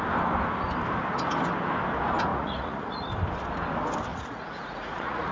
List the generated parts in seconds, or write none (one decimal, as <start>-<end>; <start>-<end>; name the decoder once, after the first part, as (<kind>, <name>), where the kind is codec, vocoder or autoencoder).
2.3-3.1 (vocoder, Vocos); 4.1-5.3